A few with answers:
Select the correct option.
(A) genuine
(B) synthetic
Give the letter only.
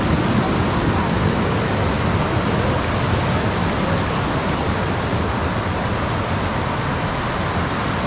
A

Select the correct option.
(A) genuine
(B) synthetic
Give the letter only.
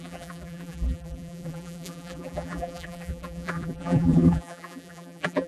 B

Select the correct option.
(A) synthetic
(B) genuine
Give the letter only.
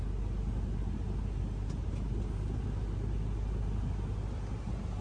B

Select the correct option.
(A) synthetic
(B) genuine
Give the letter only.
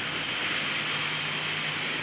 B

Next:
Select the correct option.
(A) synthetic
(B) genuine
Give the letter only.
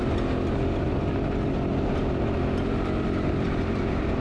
B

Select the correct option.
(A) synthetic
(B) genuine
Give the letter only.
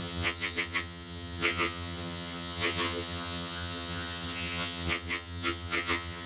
A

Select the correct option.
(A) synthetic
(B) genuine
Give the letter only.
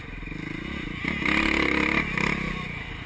B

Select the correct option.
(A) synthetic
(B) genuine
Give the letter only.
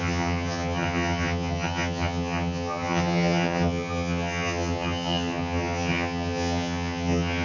A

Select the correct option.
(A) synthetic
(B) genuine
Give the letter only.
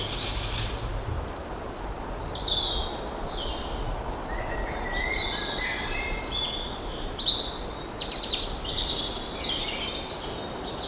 B